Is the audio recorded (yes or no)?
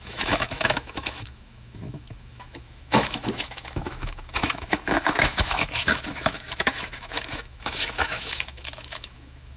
no